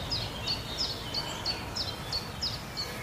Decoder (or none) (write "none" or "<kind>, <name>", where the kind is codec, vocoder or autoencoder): none